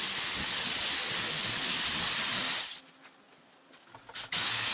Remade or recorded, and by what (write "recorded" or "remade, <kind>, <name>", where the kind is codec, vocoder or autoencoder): recorded